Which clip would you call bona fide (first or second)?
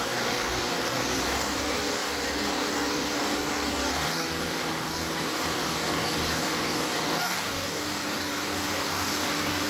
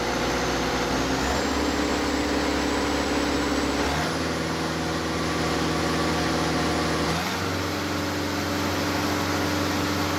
second